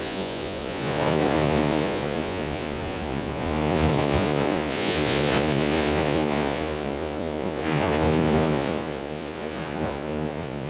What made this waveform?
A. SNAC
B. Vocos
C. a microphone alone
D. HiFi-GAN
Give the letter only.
B